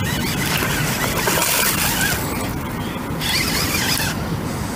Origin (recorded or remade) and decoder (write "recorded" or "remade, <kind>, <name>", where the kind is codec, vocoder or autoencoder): recorded